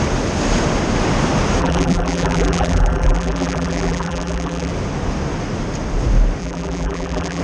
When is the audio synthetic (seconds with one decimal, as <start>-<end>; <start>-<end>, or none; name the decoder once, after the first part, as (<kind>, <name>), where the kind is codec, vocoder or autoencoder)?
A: 1.6-4.7 (vocoder, BigVGAN v2); 6.4-7.4